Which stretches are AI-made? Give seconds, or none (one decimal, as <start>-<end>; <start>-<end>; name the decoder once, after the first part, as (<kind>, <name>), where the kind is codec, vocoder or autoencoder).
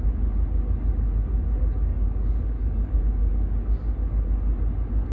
1.9-3.0 (codec, DAC)